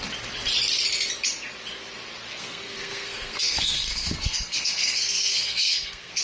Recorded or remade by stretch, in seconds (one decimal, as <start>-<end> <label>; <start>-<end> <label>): 0.0-2.3 recorded; 2.3-6.2 remade